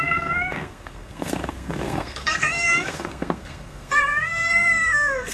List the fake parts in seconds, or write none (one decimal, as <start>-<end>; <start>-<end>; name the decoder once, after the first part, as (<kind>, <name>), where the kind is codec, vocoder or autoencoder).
0.0-5.3 (codec, SNAC)